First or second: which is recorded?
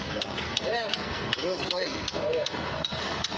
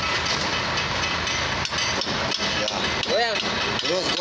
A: second